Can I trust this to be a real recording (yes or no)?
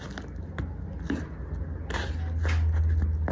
yes